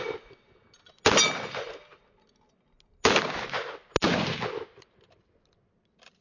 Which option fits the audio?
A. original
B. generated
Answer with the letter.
A